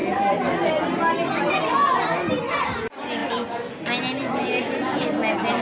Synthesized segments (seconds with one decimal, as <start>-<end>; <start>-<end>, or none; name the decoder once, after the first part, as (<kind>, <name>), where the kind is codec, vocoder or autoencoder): none